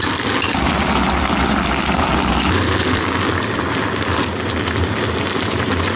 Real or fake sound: real